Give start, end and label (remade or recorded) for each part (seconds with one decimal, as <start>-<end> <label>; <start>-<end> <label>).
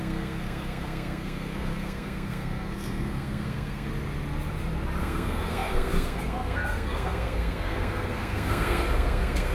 0.0-3.9 remade; 3.9-5.0 recorded; 5.0-9.5 remade